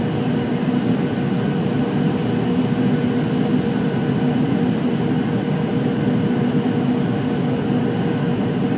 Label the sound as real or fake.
real